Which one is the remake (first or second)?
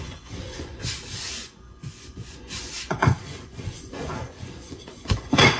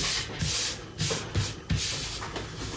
first